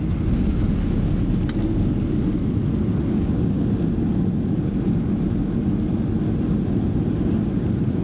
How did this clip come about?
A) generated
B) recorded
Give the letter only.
B